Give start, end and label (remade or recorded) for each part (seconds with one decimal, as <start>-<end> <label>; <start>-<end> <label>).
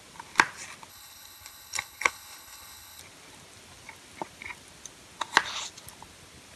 0.0-0.9 recorded; 0.9-3.0 remade; 3.0-6.6 recorded